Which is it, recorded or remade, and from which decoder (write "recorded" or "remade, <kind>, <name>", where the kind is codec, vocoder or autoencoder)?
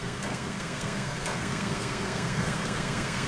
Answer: remade, codec, SNAC